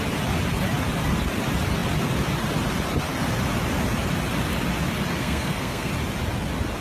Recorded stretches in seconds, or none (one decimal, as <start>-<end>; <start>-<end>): 0.0-5.2; 5.9-6.8